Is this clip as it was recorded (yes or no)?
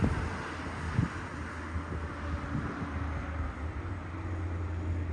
yes